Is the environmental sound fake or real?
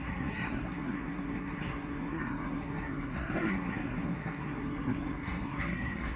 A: fake